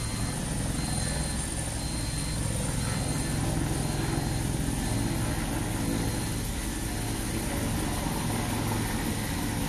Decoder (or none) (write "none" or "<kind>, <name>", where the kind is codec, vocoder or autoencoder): none